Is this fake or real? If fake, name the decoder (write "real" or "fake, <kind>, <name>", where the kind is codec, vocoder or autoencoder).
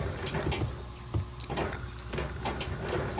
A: real